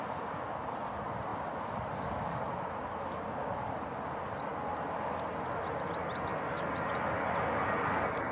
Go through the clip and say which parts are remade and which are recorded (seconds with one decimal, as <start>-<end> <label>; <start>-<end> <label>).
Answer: 0.0-8.3 recorded